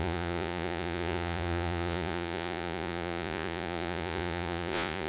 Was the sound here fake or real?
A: fake